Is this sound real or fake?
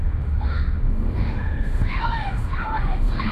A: fake